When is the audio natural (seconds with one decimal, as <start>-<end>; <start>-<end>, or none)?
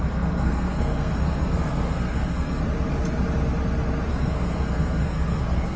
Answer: 2.6-4.1